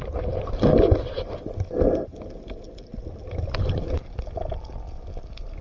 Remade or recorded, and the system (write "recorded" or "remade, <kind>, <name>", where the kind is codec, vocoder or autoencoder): recorded